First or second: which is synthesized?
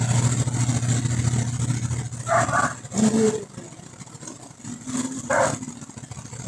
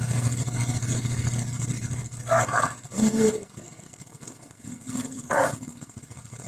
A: second